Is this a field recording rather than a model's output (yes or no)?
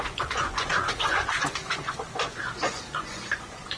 no